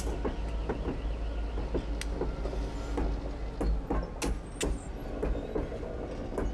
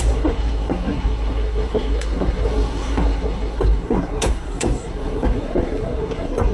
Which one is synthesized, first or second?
second